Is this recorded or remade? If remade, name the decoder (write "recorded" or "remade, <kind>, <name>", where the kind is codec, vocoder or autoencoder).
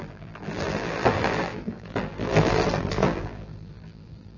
remade, vocoder, BigVGAN v2